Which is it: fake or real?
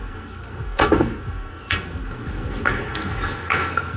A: fake